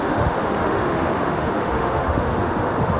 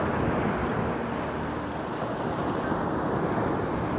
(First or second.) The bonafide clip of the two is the second